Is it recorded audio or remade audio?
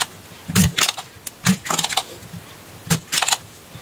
recorded